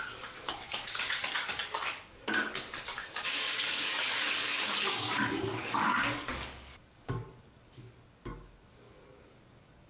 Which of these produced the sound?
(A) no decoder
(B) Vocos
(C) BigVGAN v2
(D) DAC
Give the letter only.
D